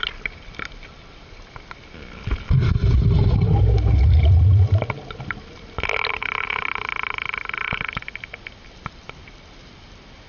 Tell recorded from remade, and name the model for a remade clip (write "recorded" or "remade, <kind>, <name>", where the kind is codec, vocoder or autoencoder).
recorded